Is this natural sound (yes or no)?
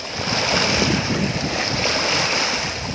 yes